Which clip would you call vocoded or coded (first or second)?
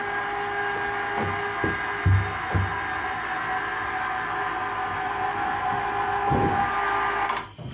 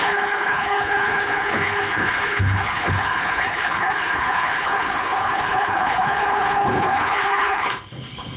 second